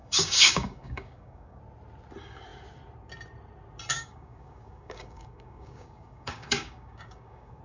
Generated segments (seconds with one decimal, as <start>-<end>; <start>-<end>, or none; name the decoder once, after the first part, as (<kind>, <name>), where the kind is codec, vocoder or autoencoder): 0.0-1.6 (codec, DAC); 3.9-7.6